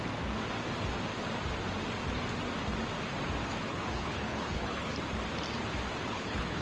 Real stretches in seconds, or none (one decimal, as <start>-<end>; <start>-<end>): 0.0-3.6; 4.9-6.1